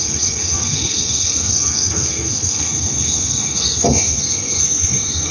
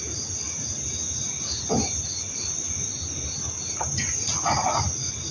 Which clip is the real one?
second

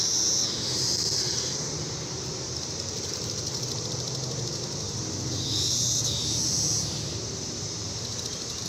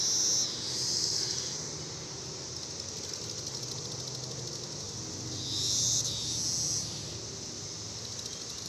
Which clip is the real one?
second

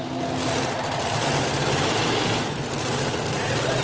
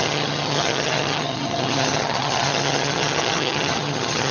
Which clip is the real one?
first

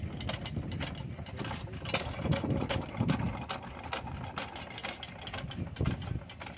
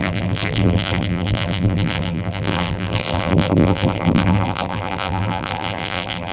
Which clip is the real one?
first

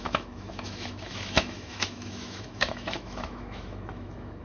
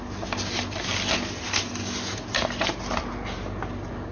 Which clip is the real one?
second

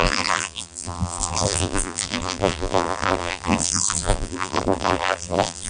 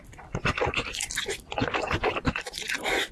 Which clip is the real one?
second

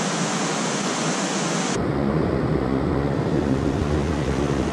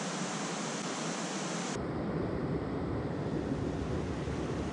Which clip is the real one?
second